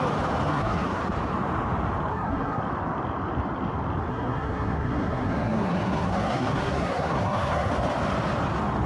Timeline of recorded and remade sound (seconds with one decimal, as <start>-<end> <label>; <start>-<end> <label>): 0.0-0.5 recorded; 0.5-1.0 remade; 1.0-2.1 recorded; 2.1-2.6 remade; 2.6-4.1 recorded; 4.1-7.7 remade; 7.7-8.9 recorded